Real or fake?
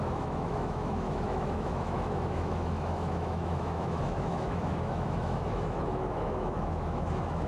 fake